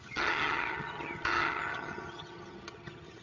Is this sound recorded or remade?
remade